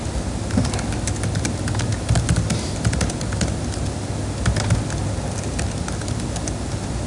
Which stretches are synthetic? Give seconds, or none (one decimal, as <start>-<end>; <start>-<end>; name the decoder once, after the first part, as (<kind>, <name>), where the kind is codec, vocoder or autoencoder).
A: none